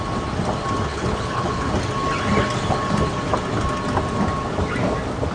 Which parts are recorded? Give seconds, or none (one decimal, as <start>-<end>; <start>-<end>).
0.0-0.9; 1.7-5.3